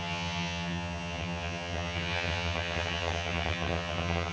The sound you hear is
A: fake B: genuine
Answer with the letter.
A